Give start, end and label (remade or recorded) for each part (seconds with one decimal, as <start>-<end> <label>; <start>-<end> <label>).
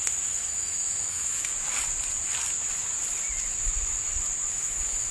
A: 0.0-1.5 remade; 1.5-4.5 recorded; 4.5-5.1 remade